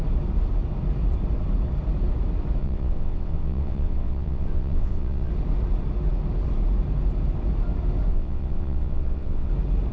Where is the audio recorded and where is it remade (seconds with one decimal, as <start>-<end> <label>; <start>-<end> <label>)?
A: 0.0-2.6 recorded; 2.6-5.3 remade; 5.3-8.1 recorded; 8.1-9.5 remade; 9.5-9.9 recorded